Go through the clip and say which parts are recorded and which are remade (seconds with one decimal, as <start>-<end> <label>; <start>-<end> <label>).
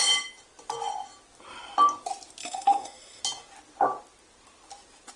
0.0-2.4 recorded; 2.4-3.2 remade; 3.2-5.2 recorded